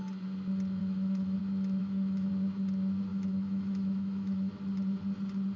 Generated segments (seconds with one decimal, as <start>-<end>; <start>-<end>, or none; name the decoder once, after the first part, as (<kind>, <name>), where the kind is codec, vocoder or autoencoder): 0.8-1.4 (autoencoder, DAC-VAE); 1.8-2.3; 3.1-4.5